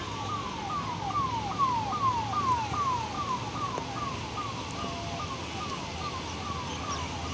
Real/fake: real